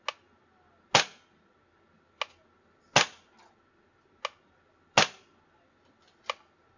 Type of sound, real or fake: real